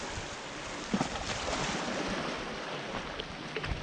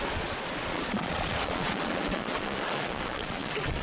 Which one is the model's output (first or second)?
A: second